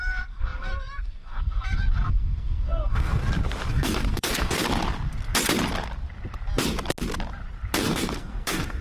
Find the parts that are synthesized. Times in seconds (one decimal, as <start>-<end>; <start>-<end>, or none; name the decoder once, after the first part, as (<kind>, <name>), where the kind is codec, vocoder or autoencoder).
0.0-3.2 (codec, SNAC); 3.7-4.6; 7.8-8.8

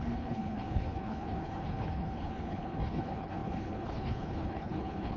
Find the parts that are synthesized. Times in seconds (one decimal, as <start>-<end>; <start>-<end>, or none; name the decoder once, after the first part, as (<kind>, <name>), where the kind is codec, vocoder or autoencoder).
0.0-5.2 (codec, HILCodec)